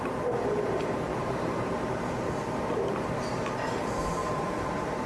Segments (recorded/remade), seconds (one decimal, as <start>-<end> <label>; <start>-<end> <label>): 0.0-1.1 recorded; 1.1-3.2 remade; 3.2-4.2 recorded; 4.2-5.1 remade